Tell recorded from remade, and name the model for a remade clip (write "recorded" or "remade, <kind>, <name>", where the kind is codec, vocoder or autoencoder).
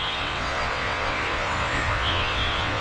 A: remade, vocoder, WaveNeXt